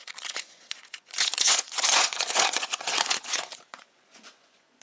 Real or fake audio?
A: fake